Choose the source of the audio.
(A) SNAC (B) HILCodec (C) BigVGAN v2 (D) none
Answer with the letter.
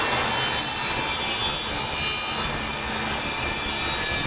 D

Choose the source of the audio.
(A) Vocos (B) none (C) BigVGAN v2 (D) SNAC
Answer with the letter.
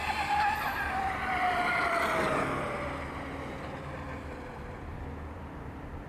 C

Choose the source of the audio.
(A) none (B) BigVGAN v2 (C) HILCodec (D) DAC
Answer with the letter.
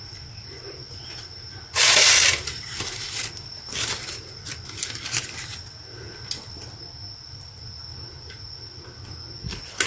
A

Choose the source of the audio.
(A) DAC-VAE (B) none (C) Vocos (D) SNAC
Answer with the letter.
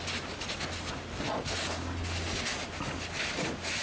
B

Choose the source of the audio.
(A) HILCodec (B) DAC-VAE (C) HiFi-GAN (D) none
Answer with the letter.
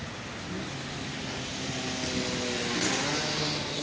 D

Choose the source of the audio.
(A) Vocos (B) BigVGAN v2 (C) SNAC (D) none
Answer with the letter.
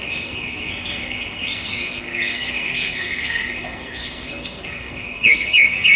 C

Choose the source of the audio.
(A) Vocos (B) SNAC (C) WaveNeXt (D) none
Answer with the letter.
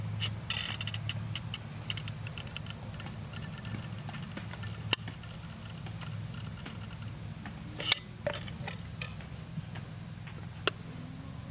D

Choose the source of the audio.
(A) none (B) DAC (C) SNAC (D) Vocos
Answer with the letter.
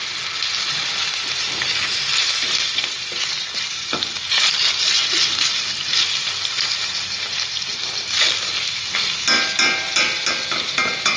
A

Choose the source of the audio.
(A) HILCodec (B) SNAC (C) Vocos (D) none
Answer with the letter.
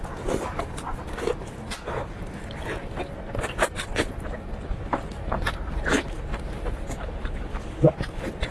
D